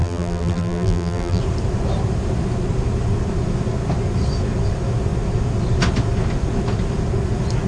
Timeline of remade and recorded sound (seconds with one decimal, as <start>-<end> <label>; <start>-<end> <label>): 0.0-1.4 remade; 1.4-7.7 recorded